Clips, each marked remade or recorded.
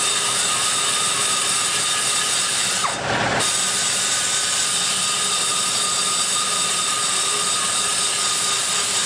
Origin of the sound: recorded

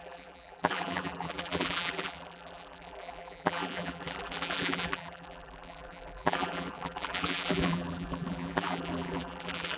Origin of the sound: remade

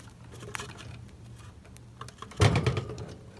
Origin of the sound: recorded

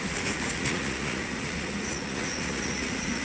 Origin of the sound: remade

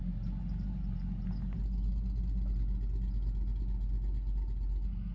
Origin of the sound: recorded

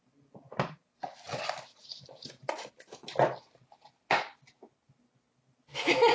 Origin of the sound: recorded